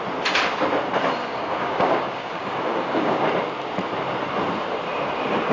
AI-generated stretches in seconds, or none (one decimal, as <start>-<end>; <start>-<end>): 1.2-3.2